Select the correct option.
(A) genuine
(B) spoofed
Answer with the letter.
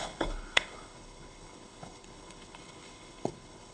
B